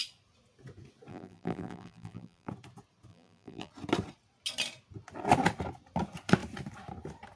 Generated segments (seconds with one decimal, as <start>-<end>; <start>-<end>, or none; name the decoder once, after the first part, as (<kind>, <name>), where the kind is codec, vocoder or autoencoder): 1.1-2.5 (vocoder, BigVGAN v2); 3.1-3.7